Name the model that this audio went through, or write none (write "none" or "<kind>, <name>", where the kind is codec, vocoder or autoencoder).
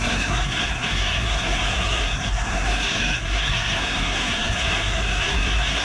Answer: codec, SNAC